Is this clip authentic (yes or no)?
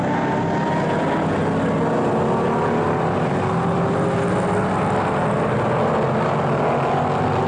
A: yes